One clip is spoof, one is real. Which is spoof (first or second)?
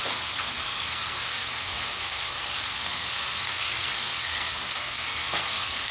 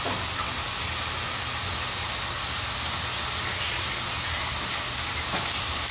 first